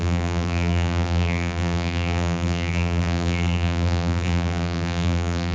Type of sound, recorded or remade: remade